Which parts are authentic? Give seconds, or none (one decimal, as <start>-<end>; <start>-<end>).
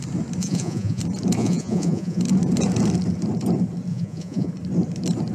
0.0-0.4; 1.0-1.4; 2.2-3.9; 4.5-5.3